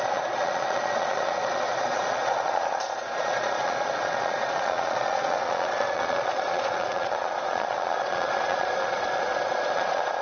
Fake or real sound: fake